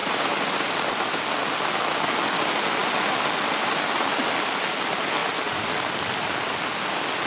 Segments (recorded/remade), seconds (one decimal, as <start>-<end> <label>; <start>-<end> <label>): 0.0-1.2 remade; 1.2-7.3 recorded